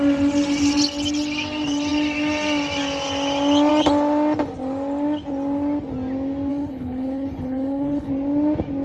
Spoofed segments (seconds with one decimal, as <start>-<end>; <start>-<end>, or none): 6.5-8.1